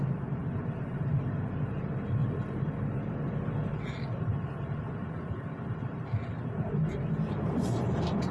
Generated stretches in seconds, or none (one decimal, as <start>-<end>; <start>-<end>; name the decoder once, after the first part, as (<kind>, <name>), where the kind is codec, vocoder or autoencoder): 0.4-0.9 (vocoder, BigVGAN v2); 2.2-6.7